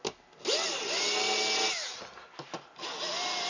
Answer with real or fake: real